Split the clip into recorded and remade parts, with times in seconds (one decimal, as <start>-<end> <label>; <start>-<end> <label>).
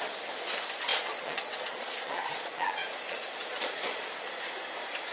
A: 0.0-0.9 recorded; 0.9-4.0 remade; 4.0-5.1 recorded